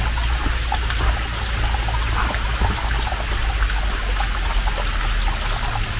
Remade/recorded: recorded